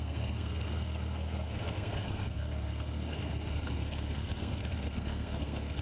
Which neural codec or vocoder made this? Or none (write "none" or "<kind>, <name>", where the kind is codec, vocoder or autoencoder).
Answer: codec, SNAC